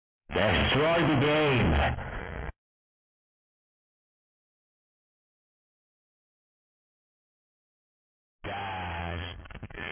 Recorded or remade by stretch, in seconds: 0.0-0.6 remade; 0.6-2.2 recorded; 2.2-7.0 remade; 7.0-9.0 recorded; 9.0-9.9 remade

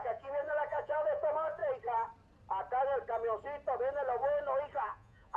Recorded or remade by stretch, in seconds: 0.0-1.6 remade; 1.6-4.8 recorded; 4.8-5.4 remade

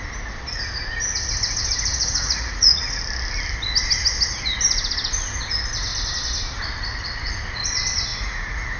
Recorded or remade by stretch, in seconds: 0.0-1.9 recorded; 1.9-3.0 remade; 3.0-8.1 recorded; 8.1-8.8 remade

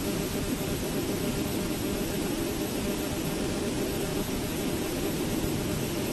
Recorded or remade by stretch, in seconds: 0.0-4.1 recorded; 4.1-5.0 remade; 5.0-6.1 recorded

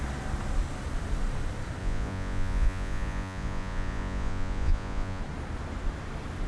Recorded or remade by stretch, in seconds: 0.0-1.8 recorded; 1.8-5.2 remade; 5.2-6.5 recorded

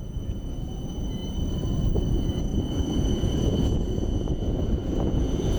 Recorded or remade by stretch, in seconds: 0.0-1.2 remade; 1.2-2.1 recorded; 2.1-5.6 remade